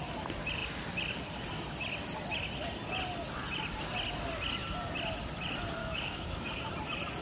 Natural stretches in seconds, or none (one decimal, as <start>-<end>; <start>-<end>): 0.0-5.8; 6.7-7.2